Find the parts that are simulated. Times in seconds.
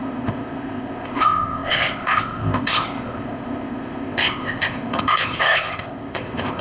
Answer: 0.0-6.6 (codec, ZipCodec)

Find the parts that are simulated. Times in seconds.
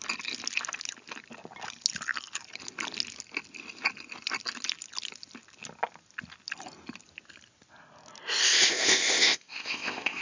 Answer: 8.4-10.2 (codec, ZipCodec)